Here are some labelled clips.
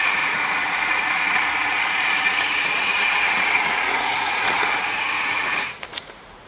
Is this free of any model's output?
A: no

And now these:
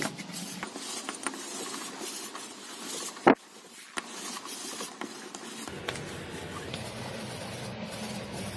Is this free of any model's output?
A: yes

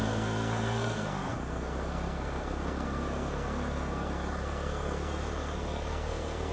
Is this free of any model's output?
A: no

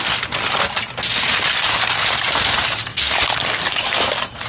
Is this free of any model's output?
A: yes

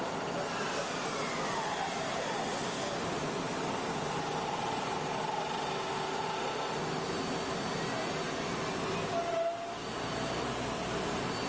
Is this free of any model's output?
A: yes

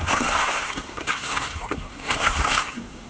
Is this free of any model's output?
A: no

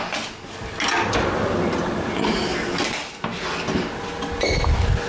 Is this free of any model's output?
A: yes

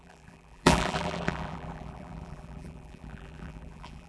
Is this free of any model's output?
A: no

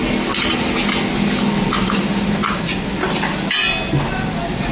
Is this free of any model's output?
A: yes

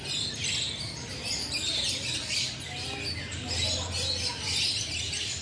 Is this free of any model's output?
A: yes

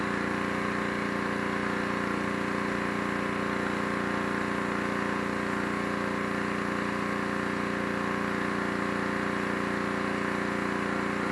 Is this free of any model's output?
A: yes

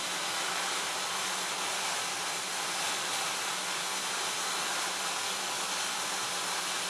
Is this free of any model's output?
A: yes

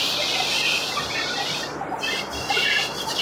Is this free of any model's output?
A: yes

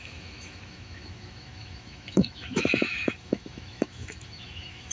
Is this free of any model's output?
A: no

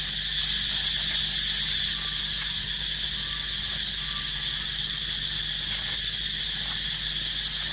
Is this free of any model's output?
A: yes